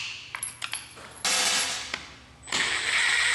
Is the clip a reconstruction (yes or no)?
no